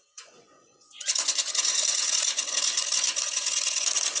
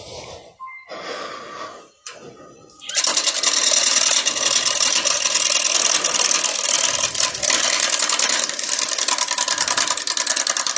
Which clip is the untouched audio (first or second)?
second